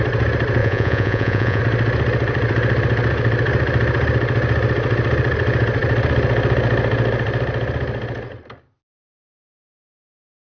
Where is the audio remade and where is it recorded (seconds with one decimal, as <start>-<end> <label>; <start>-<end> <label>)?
0.0-0.6 recorded; 0.6-1.6 remade; 1.6-10.5 recorded